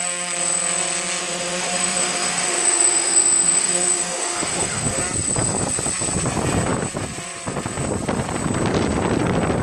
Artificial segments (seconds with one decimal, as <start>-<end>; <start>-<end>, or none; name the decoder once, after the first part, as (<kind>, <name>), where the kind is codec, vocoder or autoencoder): 1.2-5.0 (autoencoder, DAC-VAE)